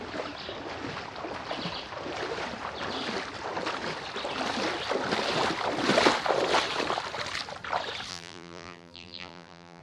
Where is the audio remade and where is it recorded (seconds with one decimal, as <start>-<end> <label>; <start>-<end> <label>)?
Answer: 0.0-8.1 recorded; 8.1-9.8 remade